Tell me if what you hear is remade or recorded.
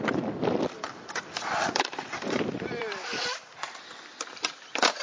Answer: remade